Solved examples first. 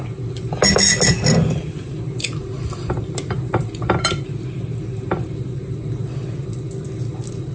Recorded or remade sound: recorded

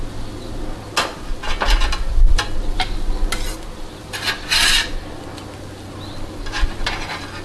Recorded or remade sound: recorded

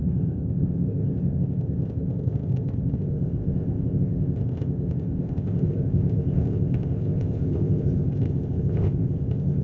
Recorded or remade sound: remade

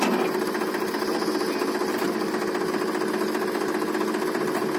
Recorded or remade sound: recorded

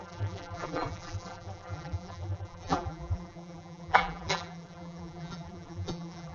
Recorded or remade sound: remade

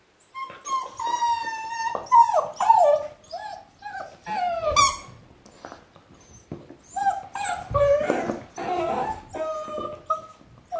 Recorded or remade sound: recorded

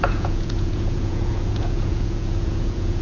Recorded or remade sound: remade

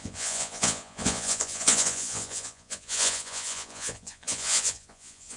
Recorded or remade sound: remade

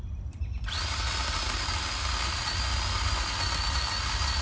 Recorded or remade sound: recorded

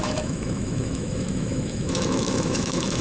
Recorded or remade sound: remade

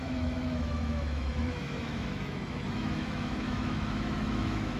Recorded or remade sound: remade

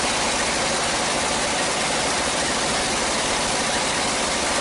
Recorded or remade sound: remade